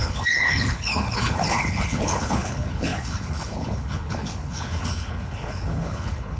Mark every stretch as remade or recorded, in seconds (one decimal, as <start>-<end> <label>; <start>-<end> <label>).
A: 0.0-6.4 remade